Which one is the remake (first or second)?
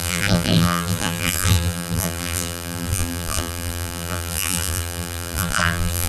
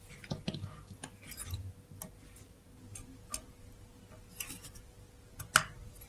first